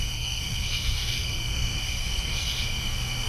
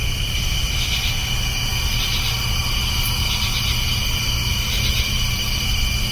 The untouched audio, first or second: second